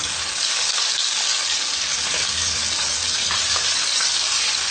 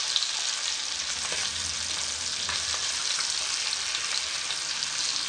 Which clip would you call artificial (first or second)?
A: first